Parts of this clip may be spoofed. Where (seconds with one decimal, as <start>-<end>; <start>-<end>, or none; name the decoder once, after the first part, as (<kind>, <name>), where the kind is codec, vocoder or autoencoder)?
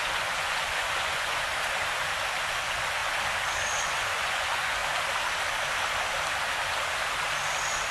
0.0-1.5 (vocoder, Vocos); 2.5-3.0; 3.8-4.8